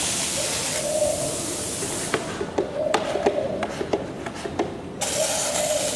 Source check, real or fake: real